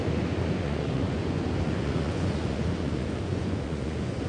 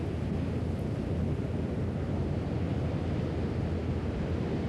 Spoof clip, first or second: first